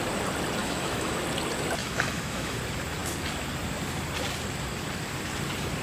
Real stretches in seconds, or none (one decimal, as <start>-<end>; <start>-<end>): 0.0-0.6; 1.2-1.8; 2.6-5.8